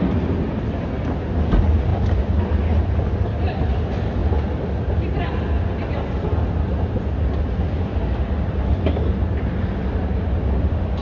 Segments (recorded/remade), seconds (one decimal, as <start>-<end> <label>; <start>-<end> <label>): 0.0-11.0 recorded